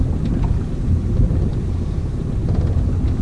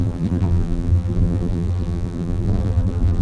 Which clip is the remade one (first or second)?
second